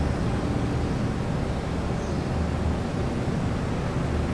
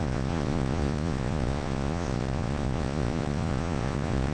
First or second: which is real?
first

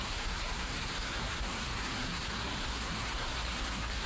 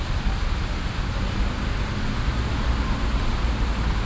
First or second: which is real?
second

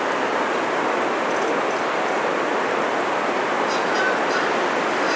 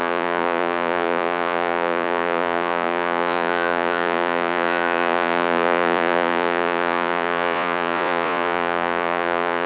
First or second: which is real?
first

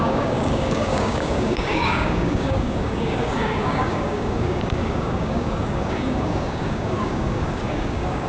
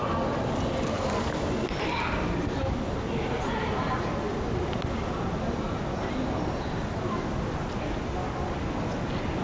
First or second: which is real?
second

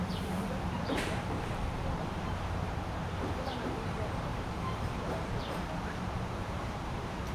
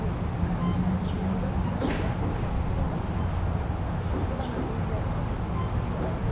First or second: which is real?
second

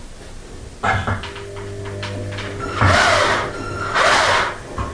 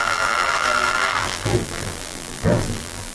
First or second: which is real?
first